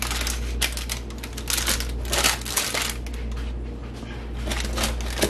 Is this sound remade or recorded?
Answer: recorded